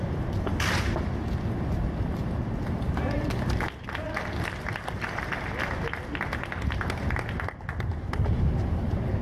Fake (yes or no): no